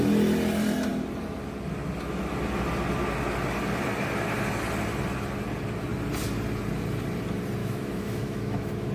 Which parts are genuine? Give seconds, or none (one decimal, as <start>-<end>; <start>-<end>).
0.0-7.6